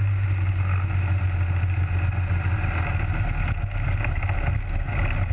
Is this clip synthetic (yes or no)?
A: no